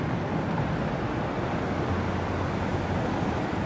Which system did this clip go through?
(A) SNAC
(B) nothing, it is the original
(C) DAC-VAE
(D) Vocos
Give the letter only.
B